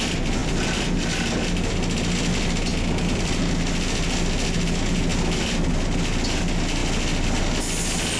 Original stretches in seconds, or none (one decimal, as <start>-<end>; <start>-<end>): 0.0-0.4; 1.7-2.7; 3.5-6.8; 7.4-8.2